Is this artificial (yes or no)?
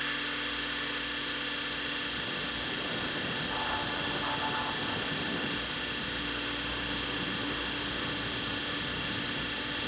no